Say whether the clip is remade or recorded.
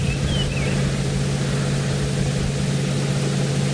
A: recorded